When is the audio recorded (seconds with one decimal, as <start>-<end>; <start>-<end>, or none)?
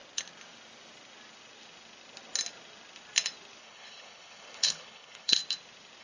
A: 0.0-3.6; 5.4-6.0